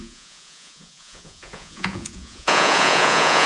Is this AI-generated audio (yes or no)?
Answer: yes